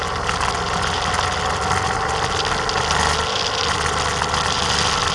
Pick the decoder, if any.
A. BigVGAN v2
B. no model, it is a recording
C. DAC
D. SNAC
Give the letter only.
B